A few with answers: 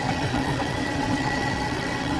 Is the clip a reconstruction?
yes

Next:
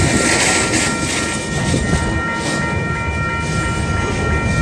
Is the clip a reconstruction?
no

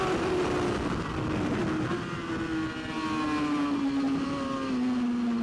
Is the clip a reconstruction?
no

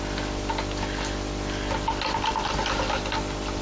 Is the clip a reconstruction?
no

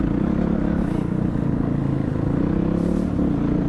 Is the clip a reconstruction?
no